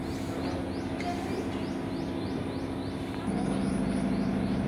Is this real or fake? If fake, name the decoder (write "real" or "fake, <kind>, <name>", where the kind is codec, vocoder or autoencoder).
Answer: real